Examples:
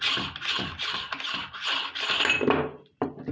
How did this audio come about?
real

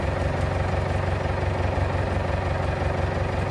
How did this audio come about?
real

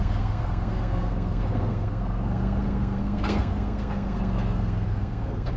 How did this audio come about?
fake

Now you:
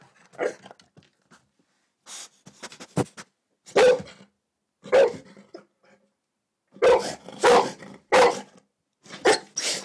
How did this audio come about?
real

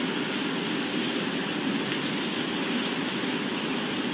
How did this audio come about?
real